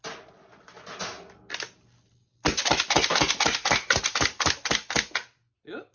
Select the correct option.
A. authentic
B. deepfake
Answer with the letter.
A